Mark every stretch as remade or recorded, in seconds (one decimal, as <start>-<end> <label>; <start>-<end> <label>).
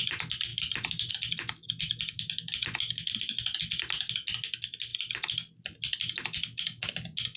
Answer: 0.0-0.5 recorded; 0.5-1.1 remade; 1.1-4.9 recorded; 4.9-5.8 remade; 5.8-7.4 recorded